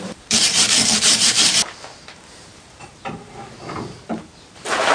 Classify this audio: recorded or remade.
remade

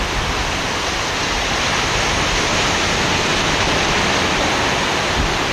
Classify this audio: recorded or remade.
recorded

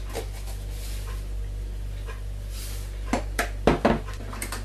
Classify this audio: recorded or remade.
recorded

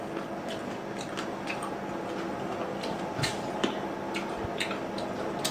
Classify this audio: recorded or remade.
recorded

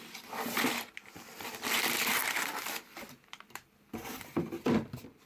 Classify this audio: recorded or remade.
remade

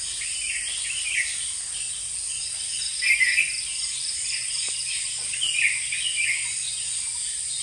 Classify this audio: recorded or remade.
recorded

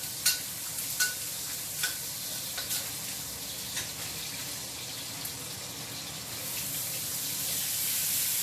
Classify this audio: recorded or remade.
recorded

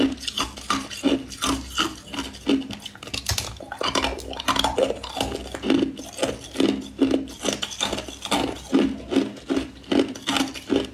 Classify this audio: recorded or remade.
recorded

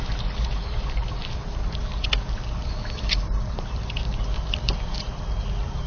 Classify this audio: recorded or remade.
remade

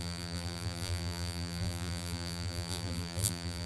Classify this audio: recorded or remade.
remade